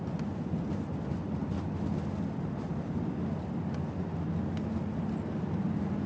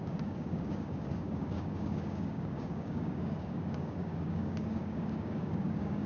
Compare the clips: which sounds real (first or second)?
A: first